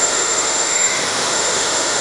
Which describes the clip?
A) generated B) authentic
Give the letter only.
A